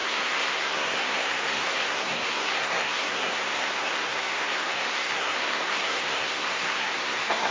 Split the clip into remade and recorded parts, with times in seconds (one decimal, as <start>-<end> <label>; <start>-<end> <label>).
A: 0.0-7.5 remade